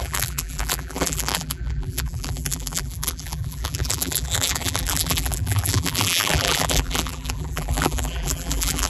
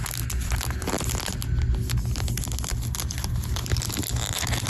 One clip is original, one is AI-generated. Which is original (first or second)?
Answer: second